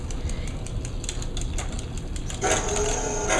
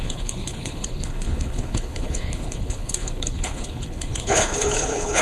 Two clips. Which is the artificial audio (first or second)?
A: second